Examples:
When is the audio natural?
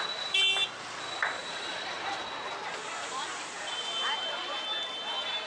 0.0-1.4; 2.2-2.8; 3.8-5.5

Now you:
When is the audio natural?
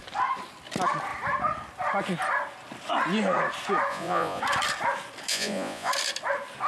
0.0-3.9; 4.4-5.3; 5.9-6.7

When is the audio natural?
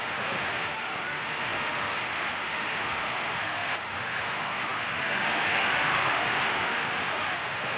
none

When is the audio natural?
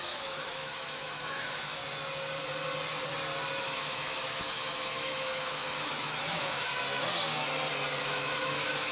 1.8-3.6; 6.7-8.0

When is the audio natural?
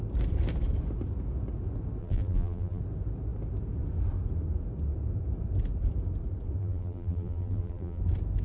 0.0-2.0; 2.8-6.6; 8.0-8.4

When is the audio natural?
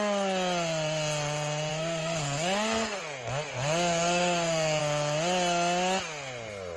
0.0-1.7; 3.0-3.5; 4.8-6.8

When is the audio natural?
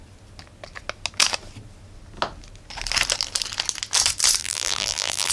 0.0-4.4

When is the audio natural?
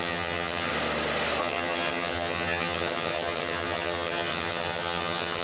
0.7-1.4